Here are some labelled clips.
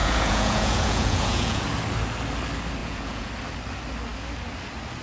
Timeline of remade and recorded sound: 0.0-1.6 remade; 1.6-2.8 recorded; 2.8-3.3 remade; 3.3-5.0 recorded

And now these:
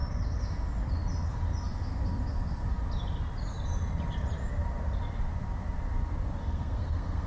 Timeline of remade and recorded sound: 0.0-6.4 recorded; 6.4-7.3 remade